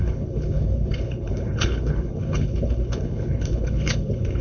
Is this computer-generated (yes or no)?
yes